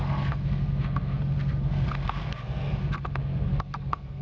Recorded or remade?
remade